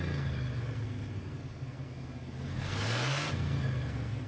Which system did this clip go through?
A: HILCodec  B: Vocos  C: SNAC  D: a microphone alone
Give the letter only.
C